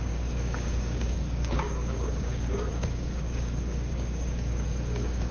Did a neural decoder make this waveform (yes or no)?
yes